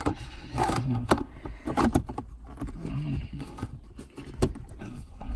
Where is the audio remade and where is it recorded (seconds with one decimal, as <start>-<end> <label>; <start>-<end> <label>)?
0.0-1.3 remade; 1.3-3.3 recorded; 3.3-3.7 remade; 3.7-4.8 recorded; 4.8-5.4 remade